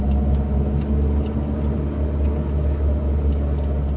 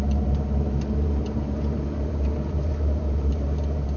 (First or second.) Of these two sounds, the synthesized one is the second